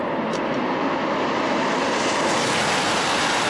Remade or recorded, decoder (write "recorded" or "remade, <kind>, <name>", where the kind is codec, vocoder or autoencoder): recorded